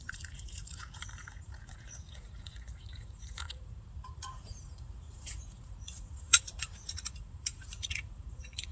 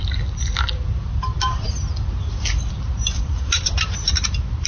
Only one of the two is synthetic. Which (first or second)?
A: first